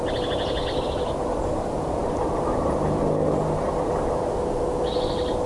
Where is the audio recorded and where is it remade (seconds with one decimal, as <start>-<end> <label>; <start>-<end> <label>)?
0.0-5.5 recorded